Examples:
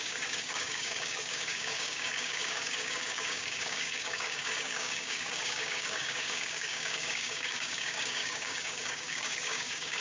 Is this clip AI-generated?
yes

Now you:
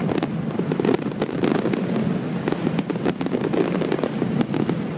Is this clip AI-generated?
no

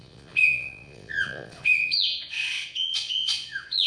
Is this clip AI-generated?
yes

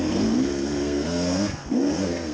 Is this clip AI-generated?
yes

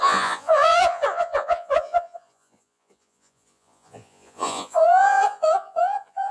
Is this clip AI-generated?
yes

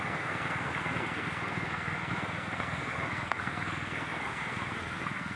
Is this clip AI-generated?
yes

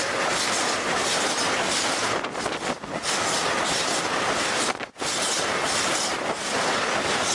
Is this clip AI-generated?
no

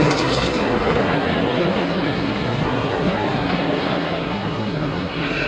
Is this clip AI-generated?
yes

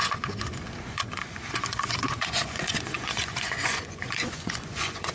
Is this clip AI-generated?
yes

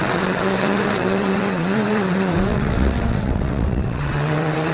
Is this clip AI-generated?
yes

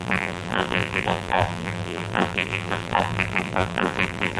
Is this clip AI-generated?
yes